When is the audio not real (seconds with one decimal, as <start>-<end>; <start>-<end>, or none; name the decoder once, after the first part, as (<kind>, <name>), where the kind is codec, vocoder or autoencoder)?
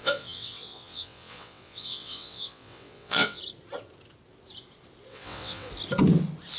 0.0-3.4 (vocoder, WaveNeXt); 5.1-5.7